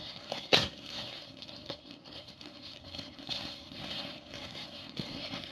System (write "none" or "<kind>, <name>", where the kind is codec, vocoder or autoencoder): codec, SNAC